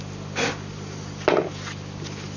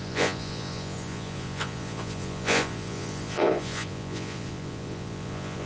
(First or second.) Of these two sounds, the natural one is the first